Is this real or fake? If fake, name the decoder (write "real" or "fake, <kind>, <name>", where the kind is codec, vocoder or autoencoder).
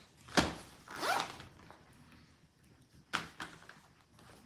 real